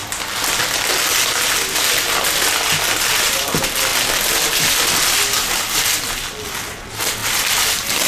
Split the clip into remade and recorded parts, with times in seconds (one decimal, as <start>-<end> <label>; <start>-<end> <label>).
0.0-8.1 recorded